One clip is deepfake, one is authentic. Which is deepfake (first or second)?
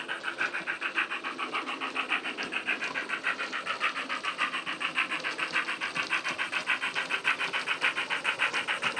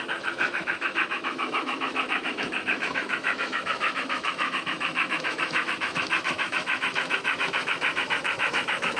second